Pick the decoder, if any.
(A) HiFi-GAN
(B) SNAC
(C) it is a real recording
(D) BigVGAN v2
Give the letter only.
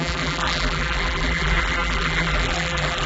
D